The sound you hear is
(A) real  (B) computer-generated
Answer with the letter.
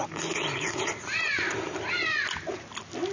A